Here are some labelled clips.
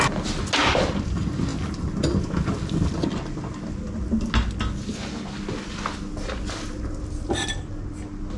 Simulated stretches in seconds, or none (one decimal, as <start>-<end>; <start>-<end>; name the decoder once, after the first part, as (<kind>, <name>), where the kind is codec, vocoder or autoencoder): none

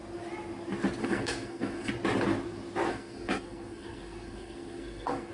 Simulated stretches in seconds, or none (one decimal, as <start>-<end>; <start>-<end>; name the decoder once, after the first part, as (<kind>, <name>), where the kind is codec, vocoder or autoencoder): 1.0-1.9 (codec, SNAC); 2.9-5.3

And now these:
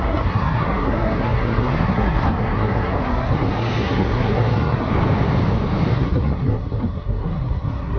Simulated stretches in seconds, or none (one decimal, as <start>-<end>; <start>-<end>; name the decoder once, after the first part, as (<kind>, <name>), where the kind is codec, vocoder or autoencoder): 0.0-4.9 (codec, SNAC); 5.9-8.0

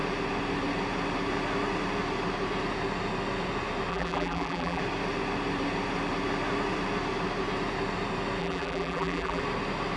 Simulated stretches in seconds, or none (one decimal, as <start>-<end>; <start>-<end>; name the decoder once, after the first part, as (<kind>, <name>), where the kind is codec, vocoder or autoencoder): 3.9-4.8 (vocoder, BigVGAN v2); 8.4-9.4

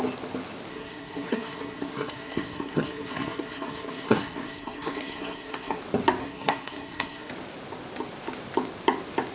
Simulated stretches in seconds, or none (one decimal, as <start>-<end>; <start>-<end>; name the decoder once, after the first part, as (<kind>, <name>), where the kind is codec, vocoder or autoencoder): 0.7-5.8 (codec, SNAC); 6.2-7.3

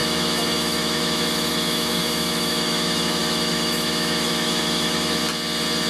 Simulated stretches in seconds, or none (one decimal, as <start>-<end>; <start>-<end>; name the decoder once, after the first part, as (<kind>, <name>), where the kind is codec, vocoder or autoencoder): 0.0-5.2 (autoencoder, DAC-VAE)

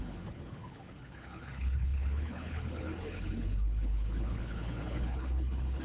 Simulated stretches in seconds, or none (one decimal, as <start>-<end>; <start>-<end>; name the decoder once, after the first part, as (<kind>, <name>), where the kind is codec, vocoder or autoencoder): 0.0-5.8 (codec, HILCodec)